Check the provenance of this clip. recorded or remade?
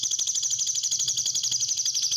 recorded